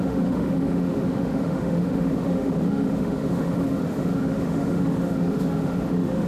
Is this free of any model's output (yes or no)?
no